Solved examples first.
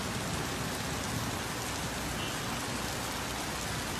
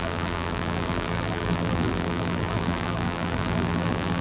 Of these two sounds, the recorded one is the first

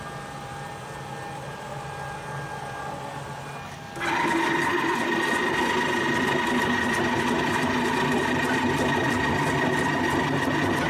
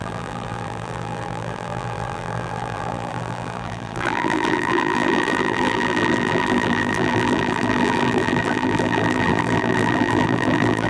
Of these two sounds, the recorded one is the first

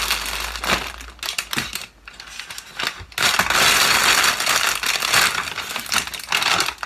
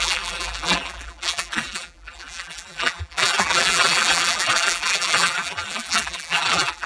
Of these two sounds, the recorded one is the first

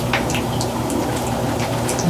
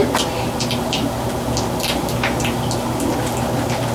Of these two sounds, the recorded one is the second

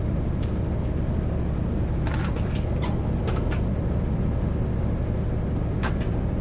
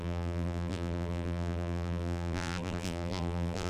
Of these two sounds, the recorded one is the first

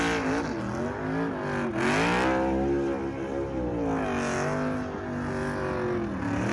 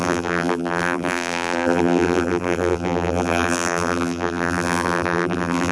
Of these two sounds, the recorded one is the first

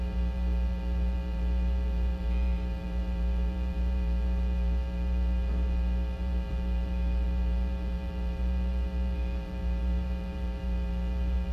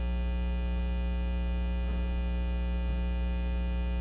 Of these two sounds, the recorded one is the second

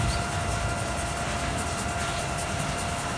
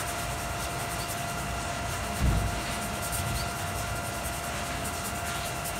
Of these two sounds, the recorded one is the second